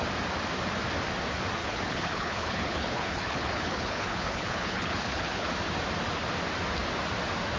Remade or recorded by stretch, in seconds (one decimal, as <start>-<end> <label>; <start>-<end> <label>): 0.0-1.6 recorded; 1.6-5.5 remade; 5.5-7.6 recorded